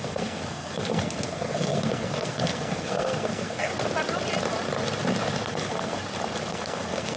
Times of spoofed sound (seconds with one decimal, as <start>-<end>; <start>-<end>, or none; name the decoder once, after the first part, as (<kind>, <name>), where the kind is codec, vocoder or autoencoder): 0.0-3.7 (codec, SNAC); 5.5-6.0; 6.5-7.2